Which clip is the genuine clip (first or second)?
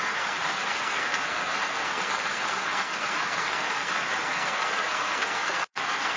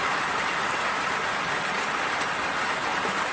second